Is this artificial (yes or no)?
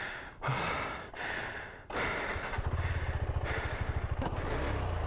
no